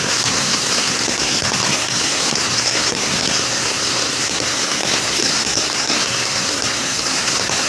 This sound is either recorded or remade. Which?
remade